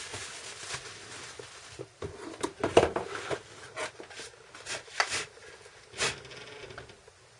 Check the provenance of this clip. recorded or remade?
recorded